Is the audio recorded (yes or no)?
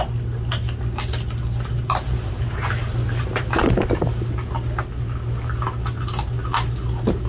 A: yes